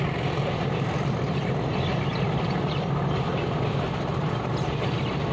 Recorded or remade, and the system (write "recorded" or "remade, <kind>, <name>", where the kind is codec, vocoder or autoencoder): recorded